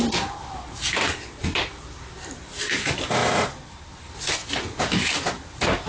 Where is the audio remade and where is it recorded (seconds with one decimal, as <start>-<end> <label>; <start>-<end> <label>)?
0.0-0.4 recorded; 0.4-1.0 remade; 1.0-3.2 recorded; 3.2-3.9 remade; 3.9-5.9 recorded